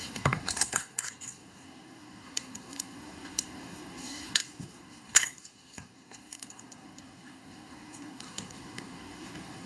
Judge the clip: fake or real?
fake